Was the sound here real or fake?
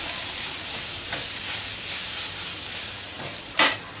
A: real